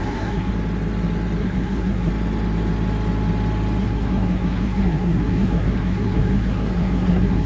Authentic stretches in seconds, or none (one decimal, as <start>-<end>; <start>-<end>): 0.5-1.4; 2.1-3.8